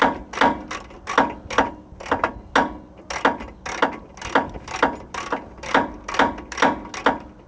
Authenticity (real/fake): real